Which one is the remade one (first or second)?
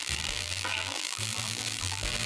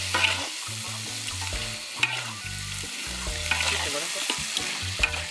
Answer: first